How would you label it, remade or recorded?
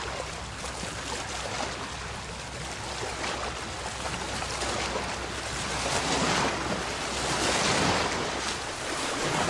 recorded